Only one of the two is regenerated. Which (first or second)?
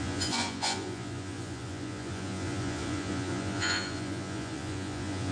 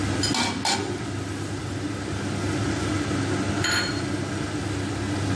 first